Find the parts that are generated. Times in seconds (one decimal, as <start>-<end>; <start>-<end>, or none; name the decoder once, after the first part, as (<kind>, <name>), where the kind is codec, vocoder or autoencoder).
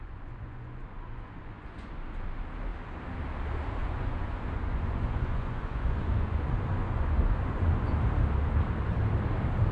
0.0-1.9 (vocoder, Vocos); 3.8-7.9